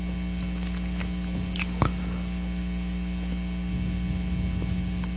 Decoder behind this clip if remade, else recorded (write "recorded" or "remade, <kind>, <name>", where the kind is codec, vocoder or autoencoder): recorded